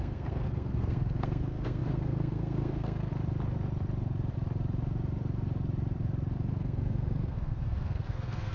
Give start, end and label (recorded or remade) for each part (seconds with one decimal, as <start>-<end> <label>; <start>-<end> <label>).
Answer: 0.0-3.1 remade; 3.1-6.5 recorded; 6.5-8.5 remade